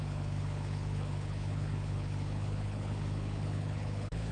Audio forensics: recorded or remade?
remade